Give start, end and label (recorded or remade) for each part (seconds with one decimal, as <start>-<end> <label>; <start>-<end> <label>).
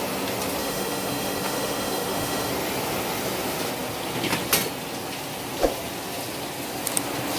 0.0-0.6 recorded; 0.6-2.5 remade; 2.5-7.4 recorded